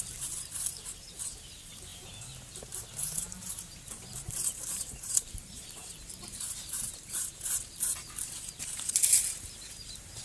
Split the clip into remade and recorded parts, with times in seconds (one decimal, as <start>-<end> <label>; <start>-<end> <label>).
0.0-10.2 remade